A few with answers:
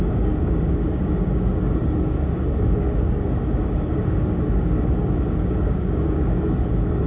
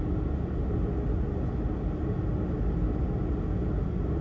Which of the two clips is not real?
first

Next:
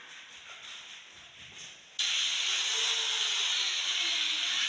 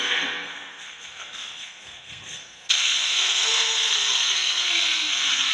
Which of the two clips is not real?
second